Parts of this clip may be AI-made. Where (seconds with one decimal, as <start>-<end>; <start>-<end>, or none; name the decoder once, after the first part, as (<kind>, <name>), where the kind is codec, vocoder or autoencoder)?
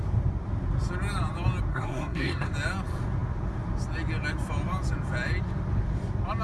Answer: 1.7-2.5 (codec, SNAC)